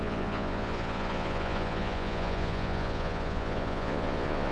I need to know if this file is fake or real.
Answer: fake